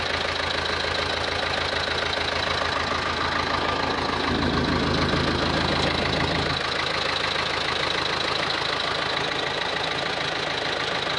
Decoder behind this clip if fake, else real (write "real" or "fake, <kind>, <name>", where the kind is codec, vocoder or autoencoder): real